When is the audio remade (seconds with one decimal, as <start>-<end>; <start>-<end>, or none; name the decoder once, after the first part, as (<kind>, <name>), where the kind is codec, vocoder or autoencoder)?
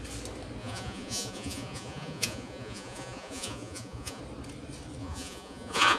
0.6-4.2 (vocoder, Vocos); 5.0-6.0